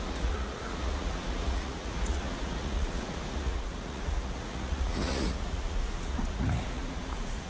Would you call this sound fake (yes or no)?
yes